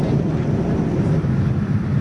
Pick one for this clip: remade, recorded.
recorded